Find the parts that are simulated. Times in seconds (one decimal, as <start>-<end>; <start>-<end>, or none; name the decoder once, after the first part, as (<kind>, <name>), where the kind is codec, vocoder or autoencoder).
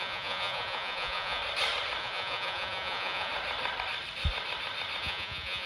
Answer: 0.0-1.4 (vocoder, Vocos); 2.0-3.3; 5.0-5.7